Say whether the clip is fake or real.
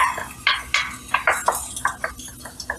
real